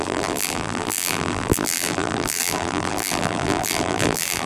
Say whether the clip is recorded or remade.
remade